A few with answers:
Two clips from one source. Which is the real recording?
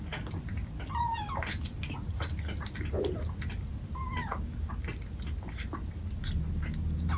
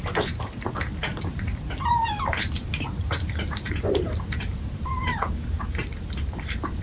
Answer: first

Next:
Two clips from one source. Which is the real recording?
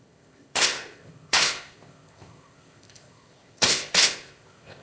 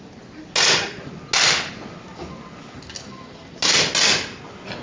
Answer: second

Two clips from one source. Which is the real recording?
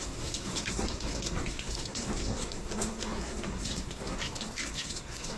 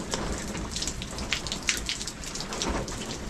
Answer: second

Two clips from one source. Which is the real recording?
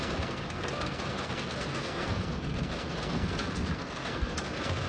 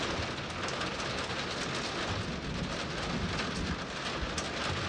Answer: second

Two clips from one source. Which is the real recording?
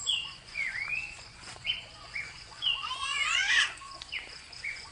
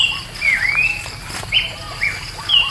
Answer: second